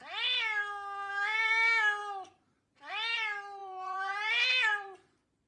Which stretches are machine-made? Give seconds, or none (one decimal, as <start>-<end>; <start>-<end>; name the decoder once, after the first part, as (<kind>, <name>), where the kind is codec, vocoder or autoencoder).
3.6-4.3 (vocoder, BigVGAN v2); 4.7-5.5